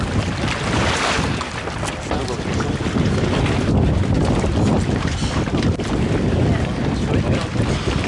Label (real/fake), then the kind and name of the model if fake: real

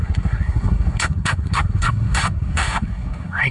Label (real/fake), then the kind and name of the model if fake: fake, codec, SNAC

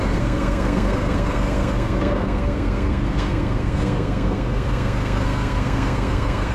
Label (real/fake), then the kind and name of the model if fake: fake, codec, SNAC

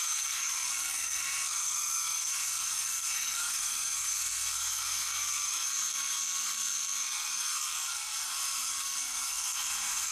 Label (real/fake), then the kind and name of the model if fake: fake, codec, SNAC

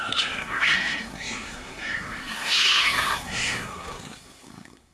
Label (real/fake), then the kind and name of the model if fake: fake, codec, SNAC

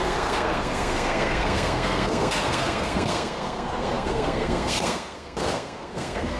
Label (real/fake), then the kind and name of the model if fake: fake, codec, SNAC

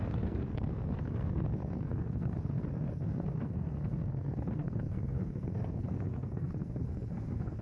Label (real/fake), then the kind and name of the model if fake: fake, codec, SNAC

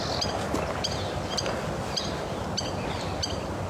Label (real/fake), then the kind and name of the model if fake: real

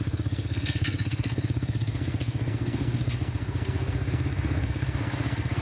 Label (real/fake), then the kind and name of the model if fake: fake, codec, SNAC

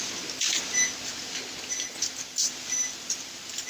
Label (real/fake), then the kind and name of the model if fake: real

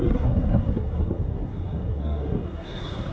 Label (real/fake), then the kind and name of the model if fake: fake, codec, SNAC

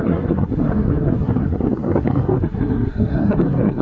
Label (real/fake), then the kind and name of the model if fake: fake, codec, SNAC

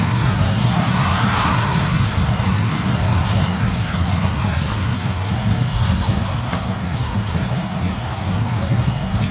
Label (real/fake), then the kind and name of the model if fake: fake, codec, SNAC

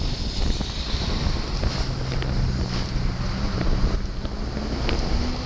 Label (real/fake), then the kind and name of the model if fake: real